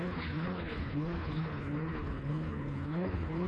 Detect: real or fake fake